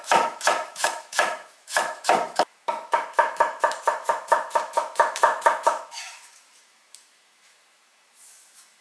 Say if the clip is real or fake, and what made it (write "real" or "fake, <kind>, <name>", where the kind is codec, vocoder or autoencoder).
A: fake, autoencoder, DAC-VAE